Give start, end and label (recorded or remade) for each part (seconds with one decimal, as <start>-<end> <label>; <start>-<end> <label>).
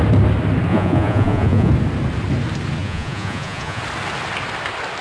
0.0-0.7 recorded; 0.7-1.7 remade; 1.7-2.8 recorded; 2.8-3.8 remade; 3.8-5.0 recorded